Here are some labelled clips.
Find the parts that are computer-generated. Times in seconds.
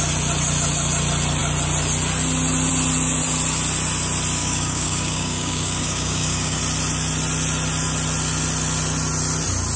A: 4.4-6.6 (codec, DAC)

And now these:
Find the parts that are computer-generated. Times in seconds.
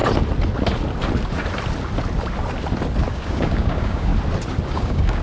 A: 3.1-4.1 (codec, DAC); 4.7-5.2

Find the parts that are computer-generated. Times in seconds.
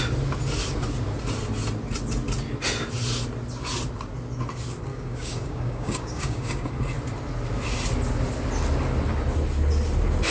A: 4.9-6.7 (codec, DAC)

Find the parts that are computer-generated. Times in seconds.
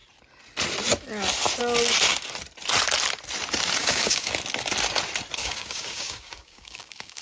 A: 3.8-4.3 (codec, DAC); 5.4-7.2